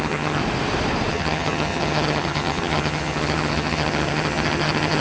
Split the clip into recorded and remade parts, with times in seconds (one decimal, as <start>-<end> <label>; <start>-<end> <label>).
0.0-0.4 remade; 0.4-1.1 recorded; 1.1-5.0 remade